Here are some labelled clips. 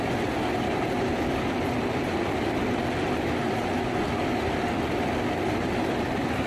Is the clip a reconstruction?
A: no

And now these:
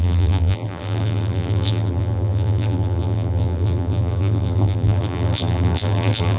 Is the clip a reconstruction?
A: yes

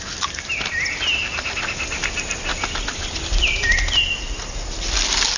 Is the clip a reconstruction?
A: no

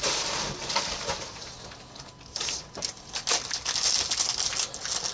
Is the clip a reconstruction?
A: no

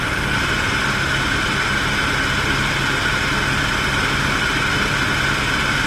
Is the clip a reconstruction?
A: no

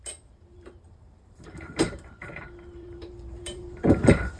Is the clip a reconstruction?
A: yes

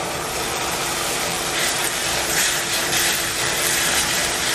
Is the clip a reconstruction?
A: yes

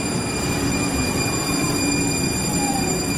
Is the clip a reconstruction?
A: yes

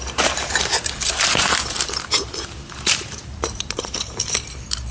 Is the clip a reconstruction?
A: yes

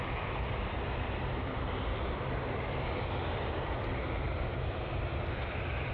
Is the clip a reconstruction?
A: yes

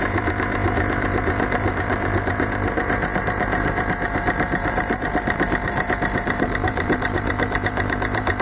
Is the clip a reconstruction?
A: yes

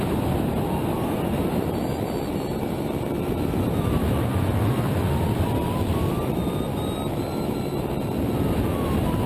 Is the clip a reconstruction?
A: yes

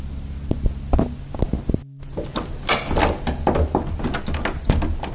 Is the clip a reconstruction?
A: no